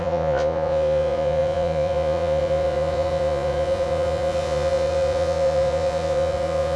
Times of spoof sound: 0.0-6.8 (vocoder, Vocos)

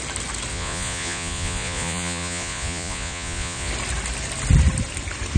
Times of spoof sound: 0.5-3.7 (vocoder, Vocos)

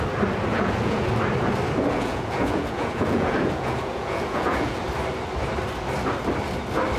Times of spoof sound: 0.5-1.1 (vocoder, Vocos); 1.9-4.8